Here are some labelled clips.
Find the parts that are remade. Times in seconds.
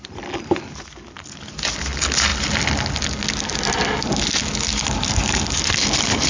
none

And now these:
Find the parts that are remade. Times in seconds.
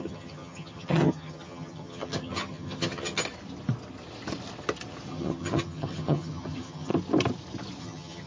0.0-3.2; 5.1-6.9; 7.8-8.3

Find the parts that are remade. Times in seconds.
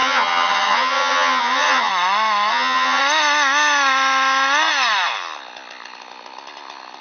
0.0-1.9; 2.5-3.0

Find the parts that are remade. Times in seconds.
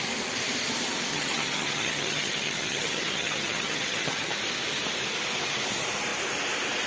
1.1-4.4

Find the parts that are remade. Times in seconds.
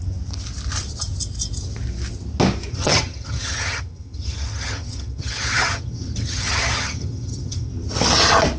2.7-7.7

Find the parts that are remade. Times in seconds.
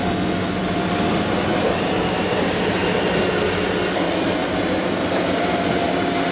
none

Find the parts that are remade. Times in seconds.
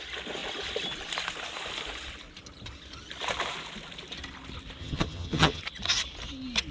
4.8-5.6